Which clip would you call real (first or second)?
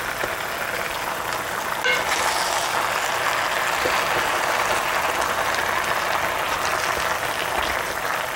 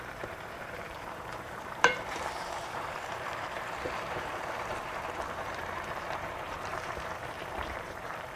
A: first